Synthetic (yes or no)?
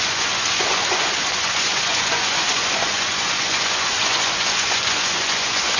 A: yes